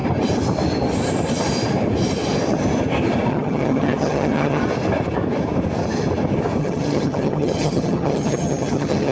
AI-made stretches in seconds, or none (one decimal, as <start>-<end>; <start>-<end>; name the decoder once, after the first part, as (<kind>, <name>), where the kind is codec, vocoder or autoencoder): 3.3-4.6 (vocoder, HiFi-GAN); 6.6-9.1

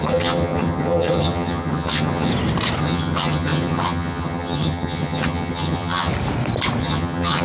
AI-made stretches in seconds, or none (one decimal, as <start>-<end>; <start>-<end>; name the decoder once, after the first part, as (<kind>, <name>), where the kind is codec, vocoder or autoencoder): 0.0-2.3 (vocoder, HiFi-GAN); 2.8-6.1; 6.8-7.4

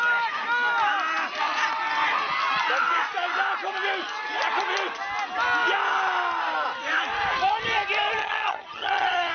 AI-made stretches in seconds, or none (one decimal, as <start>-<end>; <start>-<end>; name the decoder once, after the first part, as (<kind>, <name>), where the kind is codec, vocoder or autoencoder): 8.2-9.3 (vocoder, HiFi-GAN)

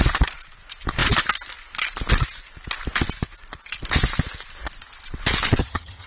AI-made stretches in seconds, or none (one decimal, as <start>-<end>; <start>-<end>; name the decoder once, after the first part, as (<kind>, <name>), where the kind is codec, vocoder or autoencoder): 5.6-6.1 (vocoder, HiFi-GAN)

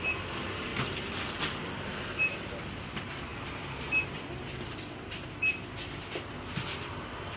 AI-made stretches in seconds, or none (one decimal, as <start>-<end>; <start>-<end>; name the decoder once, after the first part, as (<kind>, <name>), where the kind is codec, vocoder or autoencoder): none